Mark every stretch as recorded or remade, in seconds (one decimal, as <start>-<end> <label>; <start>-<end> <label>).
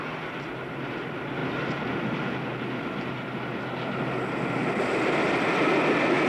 0.0-6.3 recorded